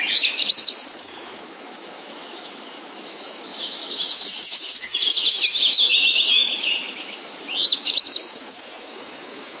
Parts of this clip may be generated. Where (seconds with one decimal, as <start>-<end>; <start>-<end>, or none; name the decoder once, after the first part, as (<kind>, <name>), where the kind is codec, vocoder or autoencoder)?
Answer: 0.0-9.6 (autoencoder, DAC-VAE)